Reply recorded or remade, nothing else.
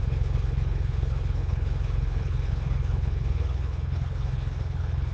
remade